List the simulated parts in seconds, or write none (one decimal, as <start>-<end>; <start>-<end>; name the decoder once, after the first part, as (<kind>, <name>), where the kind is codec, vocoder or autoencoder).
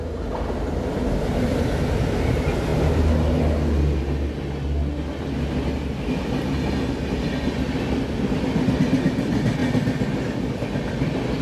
none